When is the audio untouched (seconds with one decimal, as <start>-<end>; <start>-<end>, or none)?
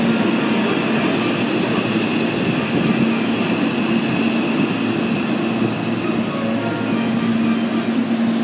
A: 0.0-8.4